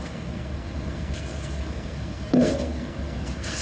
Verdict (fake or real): fake